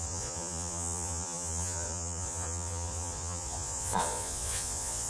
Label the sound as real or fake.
fake